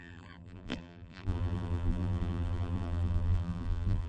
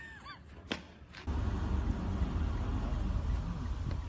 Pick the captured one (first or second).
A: second